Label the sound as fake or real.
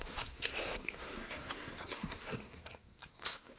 fake